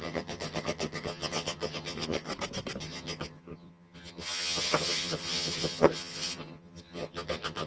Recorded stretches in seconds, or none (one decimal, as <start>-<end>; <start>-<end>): 2.3-2.8